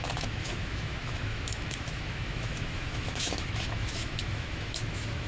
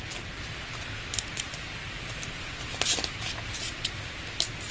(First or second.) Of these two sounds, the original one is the second